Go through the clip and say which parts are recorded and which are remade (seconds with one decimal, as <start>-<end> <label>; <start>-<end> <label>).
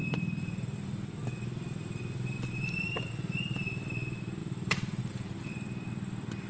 0.0-3.1 remade; 3.1-4.4 recorded; 4.4-5.0 remade; 5.0-6.5 recorded